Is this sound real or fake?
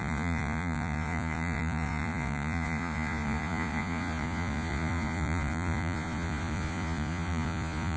fake